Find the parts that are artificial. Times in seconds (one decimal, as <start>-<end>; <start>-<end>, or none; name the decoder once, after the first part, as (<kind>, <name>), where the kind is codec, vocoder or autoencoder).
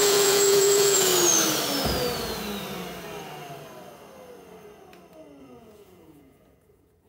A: 0.0-1.1 (vocoder, Vocos); 5.4-7.1